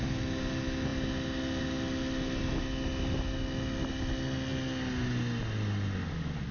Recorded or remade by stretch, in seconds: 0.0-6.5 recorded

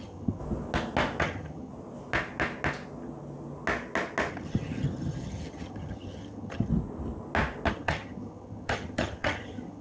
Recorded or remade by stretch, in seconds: 0.0-0.4 remade; 0.4-1.2 recorded; 1.2-1.7 remade; 1.7-4.3 recorded; 4.3-6.7 remade; 6.7-7.7 recorded; 7.7-9.8 remade

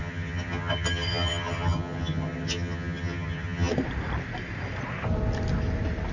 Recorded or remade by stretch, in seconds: 0.0-3.7 remade; 3.7-6.1 recorded

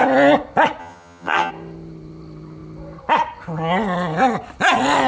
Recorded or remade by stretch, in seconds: 0.0-0.8 recorded; 0.8-1.5 remade; 1.5-5.1 recorded

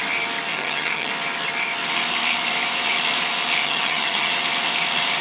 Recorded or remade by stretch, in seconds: 0.0-0.5 recorded; 0.5-1.1 remade; 1.1-3.6 recorded; 3.6-4.3 remade; 4.3-5.2 recorded

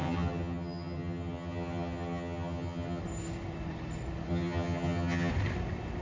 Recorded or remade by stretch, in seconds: 0.0-3.0 remade; 3.0-4.3 recorded; 4.3-5.3 remade; 5.3-6.0 recorded